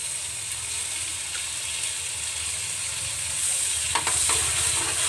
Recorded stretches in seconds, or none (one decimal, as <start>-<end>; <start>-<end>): 0.0-5.1